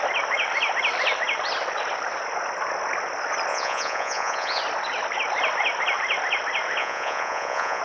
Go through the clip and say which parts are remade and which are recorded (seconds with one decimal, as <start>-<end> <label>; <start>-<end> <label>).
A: 0.0-3.5 recorded; 3.5-4.6 remade; 4.6-6.8 recorded; 6.8-7.8 remade